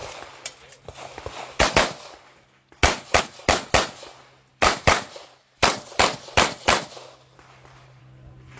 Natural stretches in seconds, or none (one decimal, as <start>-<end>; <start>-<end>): 0.0-4.5; 8.0-8.6